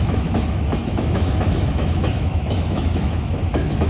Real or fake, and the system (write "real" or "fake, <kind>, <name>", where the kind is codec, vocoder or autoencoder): fake, autoencoder, DAC-VAE